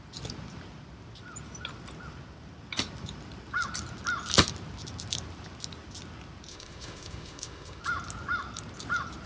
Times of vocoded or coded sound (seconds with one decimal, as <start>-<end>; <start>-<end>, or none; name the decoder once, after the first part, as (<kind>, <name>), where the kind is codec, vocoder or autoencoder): 6.5-7.8 (autoencoder, DAC-VAE)